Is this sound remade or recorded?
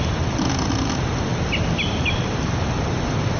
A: recorded